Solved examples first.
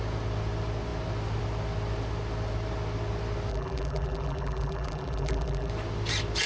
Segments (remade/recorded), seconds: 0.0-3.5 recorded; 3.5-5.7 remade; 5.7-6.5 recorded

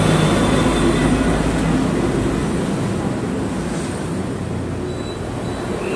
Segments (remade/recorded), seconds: 0.0-6.0 recorded